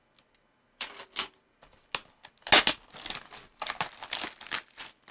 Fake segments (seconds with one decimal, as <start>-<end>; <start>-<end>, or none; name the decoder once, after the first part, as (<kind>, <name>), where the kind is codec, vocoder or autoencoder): none